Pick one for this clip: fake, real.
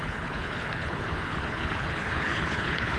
fake